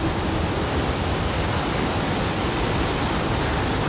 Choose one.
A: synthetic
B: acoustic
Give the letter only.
A